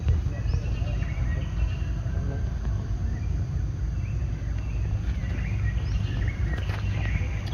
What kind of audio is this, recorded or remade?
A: recorded